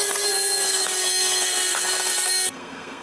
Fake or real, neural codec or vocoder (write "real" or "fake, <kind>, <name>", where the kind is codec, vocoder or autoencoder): fake, codec, SNAC